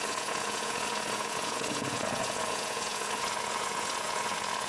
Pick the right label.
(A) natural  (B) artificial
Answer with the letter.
B